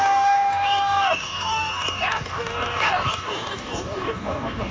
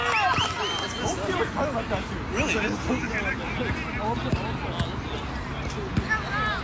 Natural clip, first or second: second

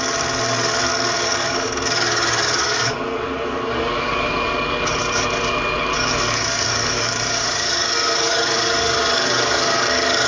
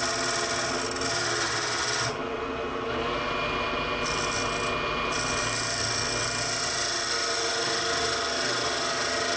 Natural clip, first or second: second